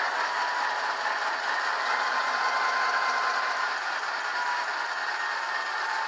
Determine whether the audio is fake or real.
real